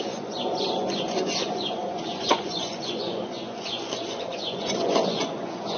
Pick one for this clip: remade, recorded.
remade